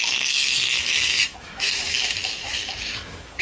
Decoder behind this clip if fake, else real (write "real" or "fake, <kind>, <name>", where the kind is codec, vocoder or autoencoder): fake, autoencoder, DAC-VAE